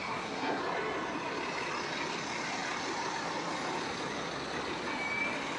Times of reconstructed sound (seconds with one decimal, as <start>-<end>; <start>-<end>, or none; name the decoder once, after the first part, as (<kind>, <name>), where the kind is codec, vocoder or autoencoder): 0.0-0.6 (codec, SNAC)

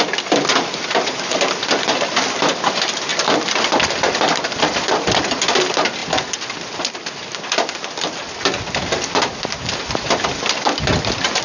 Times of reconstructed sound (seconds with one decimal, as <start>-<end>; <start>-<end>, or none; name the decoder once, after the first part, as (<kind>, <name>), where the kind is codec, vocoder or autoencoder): 0.5-2.7 (vocoder, BigVGAN v2); 3.1-5.2